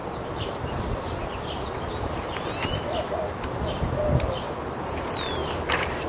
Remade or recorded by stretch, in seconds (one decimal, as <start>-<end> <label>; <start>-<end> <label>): 0.0-6.1 recorded